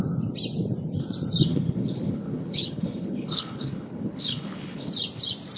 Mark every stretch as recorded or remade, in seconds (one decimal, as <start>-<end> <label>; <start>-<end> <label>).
0.0-1.5 recorded; 1.5-4.9 remade; 4.9-5.6 recorded